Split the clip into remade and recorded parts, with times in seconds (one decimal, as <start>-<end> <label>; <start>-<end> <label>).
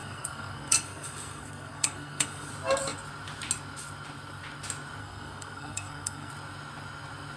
0.0-2.5 remade; 2.5-5.0 recorded; 5.0-6.3 remade; 6.3-7.4 recorded